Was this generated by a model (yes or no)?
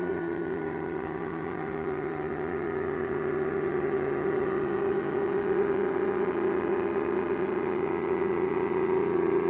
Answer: yes